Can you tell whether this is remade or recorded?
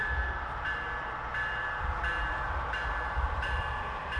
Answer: remade